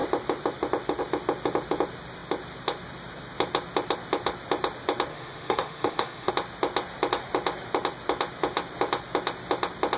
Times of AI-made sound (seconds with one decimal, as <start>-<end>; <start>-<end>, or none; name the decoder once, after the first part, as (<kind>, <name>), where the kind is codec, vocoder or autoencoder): 5.1-6.3 (autoencoder, DAC-VAE)